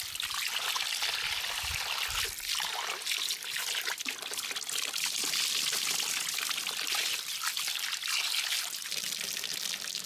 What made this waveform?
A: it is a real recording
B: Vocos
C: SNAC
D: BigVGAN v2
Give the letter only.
A